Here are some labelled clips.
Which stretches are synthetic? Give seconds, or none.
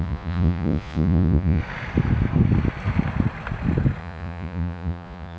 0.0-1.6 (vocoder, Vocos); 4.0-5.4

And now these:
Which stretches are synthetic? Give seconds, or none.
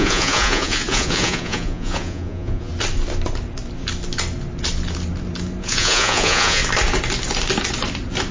0.0-2.7 (vocoder, Vocos); 5.6-6.6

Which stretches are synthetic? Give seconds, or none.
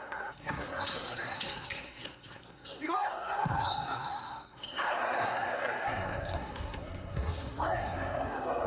0.0-8.7 (codec, SNAC)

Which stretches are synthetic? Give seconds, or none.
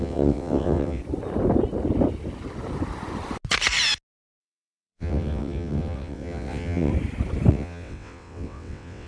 0.0-1.0 (vocoder, WaveNeXt); 4.4-6.9; 7.5-9.1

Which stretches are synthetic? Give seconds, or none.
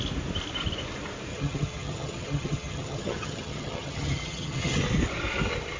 1.3-4.8 (vocoder, HiFi-GAN)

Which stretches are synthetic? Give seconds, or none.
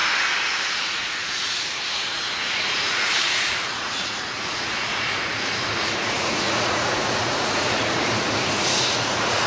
0.0-9.5 (vocoder, Vocos)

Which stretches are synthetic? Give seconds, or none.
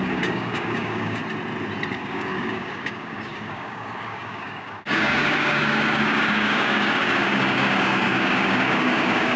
0.0-1.2 (codec, DAC); 1.9-9.4